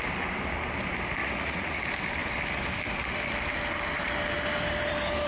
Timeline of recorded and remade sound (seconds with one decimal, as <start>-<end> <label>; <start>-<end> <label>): 0.0-1.2 recorded; 1.2-1.8 remade; 1.8-5.3 recorded